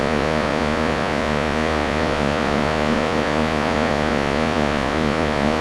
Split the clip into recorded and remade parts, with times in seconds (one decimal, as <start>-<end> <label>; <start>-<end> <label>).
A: 0.0-5.6 remade